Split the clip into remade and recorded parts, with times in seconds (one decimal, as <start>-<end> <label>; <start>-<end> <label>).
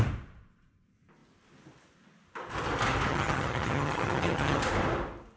0.0-3.1 recorded; 3.1-4.6 remade; 4.6-5.4 recorded